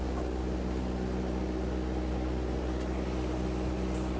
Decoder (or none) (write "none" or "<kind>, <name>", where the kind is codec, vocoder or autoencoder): none